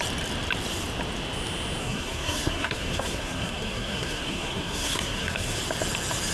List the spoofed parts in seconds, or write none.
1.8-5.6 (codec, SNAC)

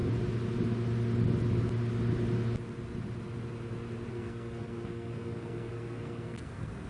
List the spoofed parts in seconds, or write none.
4.1-6.9 (codec, SNAC)

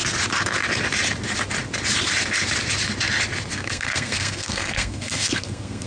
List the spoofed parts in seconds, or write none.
3.5-5.9 (codec, SNAC)

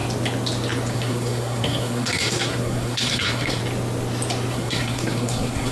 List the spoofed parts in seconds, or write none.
0.9-3.6 (codec, SNAC); 4.5-5.7

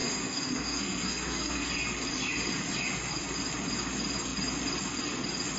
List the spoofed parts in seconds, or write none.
0.0-1.7 (codec, SNAC)

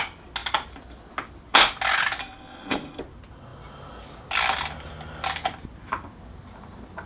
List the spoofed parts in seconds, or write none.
2.2-3.0 (codec, SNAC)

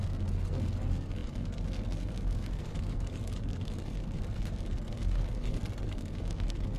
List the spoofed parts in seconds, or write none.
0.0-6.8 (codec, SNAC)

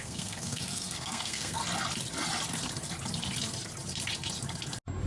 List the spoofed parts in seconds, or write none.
0.0-1.6 (codec, SNAC)